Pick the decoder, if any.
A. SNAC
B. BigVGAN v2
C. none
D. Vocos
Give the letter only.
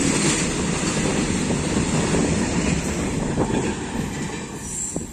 C